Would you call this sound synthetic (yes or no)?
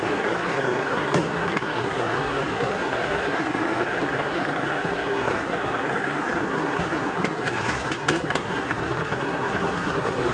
yes